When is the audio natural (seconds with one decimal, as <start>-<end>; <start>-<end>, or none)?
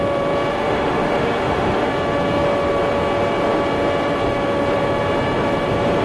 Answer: 0.0-0.5; 1.9-6.0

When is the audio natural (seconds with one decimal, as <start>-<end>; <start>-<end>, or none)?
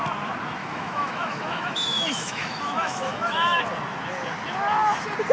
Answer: 0.0-0.6; 3.6-5.3